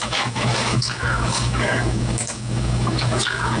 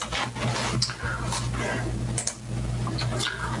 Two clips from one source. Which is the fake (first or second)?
first